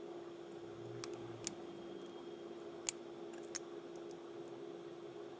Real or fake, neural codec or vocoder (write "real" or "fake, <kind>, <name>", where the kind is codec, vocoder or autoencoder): real